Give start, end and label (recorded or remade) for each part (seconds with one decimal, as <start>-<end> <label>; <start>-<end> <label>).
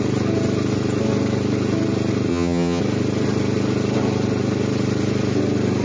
0.0-2.3 recorded; 2.3-2.8 remade; 2.8-5.8 recorded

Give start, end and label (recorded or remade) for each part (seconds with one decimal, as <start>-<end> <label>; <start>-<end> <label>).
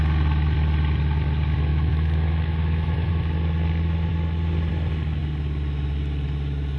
0.0-1.7 recorded; 1.7-3.1 remade; 3.1-6.8 recorded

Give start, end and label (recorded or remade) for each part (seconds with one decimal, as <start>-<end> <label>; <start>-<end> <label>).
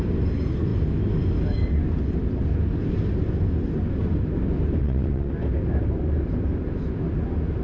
0.0-4.8 recorded; 4.8-5.3 remade; 5.3-7.6 recorded